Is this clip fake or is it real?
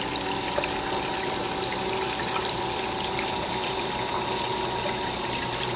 real